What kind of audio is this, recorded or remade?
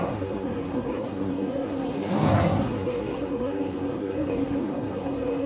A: remade